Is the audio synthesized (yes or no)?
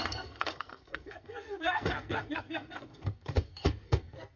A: yes